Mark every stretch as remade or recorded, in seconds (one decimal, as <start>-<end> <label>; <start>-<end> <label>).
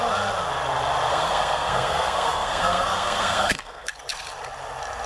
0.0-1.1 recorded; 1.1-3.9 remade; 3.9-5.1 recorded